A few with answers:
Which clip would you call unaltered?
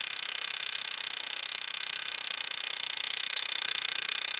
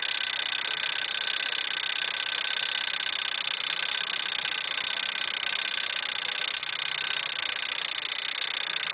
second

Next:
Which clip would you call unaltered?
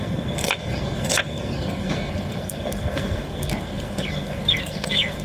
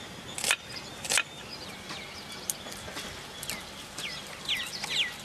second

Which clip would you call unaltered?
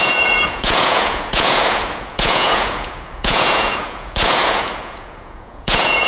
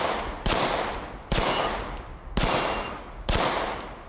second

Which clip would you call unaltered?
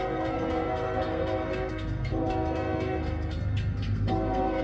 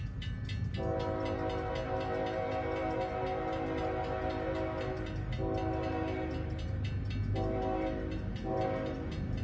second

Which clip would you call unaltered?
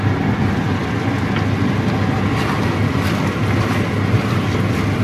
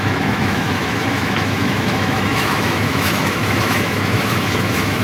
first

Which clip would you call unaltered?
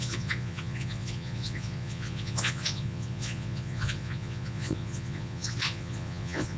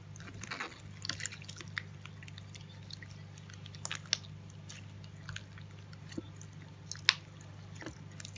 second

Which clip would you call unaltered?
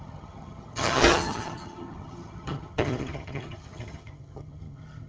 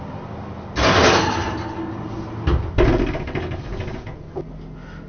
second